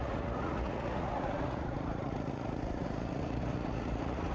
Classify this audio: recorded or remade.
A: remade